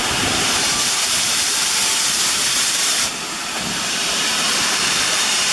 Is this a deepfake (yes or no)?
yes